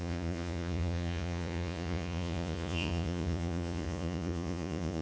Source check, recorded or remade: remade